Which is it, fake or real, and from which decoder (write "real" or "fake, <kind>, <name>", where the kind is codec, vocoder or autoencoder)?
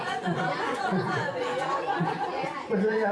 fake, vocoder, Vocos